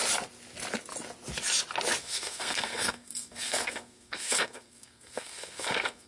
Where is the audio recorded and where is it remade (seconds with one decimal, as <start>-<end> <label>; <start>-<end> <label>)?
0.0-2.0 recorded; 2.0-6.1 remade